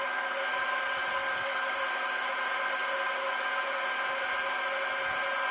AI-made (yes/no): no